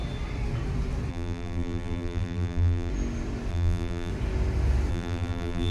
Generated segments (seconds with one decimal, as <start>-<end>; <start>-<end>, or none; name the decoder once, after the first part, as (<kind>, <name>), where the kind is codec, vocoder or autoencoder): 1.1-2.9 (vocoder, BigVGAN v2); 3.5-4.1; 4.9-5.7